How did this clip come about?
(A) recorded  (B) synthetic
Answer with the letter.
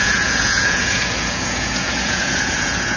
B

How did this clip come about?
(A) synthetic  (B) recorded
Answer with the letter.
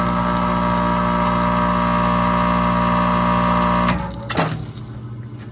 B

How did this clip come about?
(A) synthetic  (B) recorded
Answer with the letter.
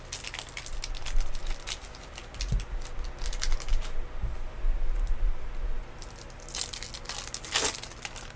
B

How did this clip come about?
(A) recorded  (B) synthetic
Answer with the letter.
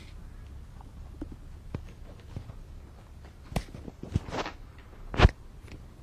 A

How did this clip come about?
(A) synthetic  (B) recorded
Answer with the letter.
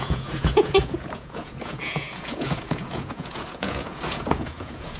A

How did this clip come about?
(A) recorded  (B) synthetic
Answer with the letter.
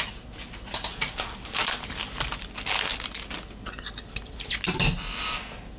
A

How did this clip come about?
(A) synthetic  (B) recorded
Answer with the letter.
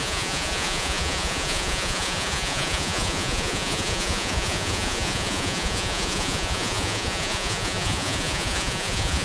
A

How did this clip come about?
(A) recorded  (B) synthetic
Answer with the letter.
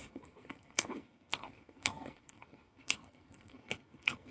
B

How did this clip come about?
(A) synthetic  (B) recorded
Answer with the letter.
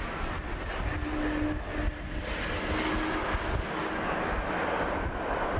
B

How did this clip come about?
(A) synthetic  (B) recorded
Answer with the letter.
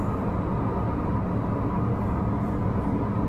B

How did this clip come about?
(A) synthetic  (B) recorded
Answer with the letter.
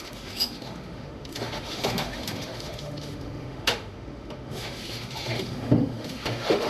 A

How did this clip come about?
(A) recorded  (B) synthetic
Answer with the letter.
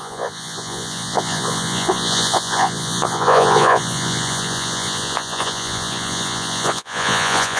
B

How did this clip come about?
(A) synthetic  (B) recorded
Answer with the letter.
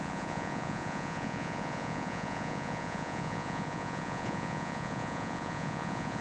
A